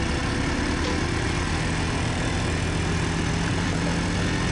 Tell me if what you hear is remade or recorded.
recorded